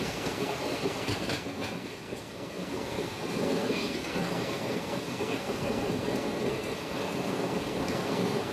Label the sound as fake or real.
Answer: fake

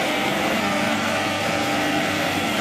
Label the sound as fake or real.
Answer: fake